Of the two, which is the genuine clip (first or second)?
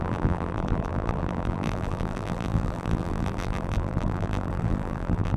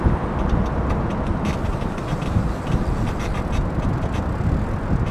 second